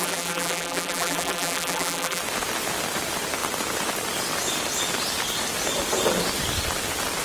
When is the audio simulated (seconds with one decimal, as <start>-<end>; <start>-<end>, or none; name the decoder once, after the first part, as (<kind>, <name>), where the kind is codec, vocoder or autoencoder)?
0.0-2.2 (vocoder, BigVGAN v2)